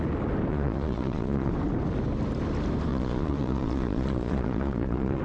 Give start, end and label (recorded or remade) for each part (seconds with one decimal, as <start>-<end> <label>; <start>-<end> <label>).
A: 0.0-0.5 recorded; 0.5-1.5 remade; 1.5-2.9 recorded; 2.9-5.2 remade